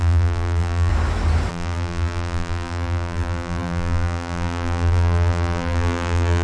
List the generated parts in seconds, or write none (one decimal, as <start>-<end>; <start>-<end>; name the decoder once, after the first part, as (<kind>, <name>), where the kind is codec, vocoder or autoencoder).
0.0-0.9 (vocoder, BigVGAN v2); 1.5-6.4